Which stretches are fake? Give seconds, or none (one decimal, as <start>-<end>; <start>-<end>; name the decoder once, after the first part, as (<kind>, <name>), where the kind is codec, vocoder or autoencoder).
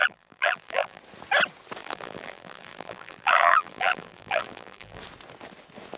0.0-1.0 (vocoder, BigVGAN v2); 1.8-5.0